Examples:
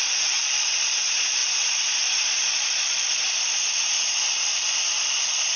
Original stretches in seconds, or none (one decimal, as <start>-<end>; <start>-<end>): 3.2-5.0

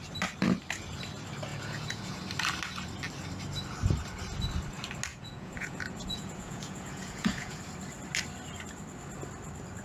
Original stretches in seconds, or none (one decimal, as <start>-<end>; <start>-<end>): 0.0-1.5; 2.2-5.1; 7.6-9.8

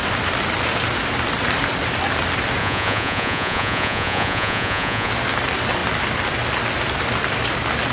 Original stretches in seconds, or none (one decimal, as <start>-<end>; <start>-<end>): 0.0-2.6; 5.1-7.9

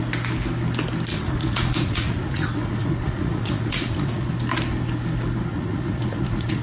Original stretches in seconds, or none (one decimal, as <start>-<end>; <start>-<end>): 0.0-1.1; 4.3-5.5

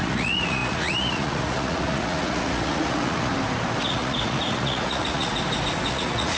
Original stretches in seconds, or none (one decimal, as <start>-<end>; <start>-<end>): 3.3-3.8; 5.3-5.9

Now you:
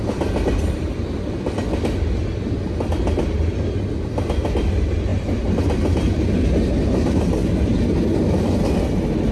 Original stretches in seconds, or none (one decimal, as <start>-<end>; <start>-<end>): 0.0-9.3

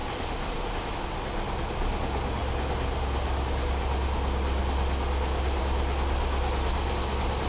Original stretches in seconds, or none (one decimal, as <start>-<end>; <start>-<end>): 0.0-7.5